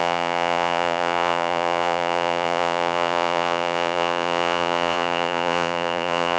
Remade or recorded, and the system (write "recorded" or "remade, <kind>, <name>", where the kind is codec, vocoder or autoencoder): remade, vocoder, Vocos